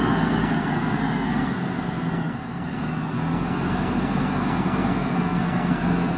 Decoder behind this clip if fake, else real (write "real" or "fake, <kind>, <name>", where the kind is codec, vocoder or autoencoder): fake, codec, SNAC